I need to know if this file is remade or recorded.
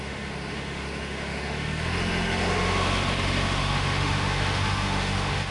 remade